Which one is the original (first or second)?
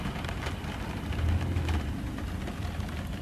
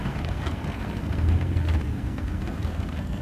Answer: first